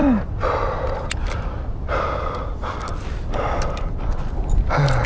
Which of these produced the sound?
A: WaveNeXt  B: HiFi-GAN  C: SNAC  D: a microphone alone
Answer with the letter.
D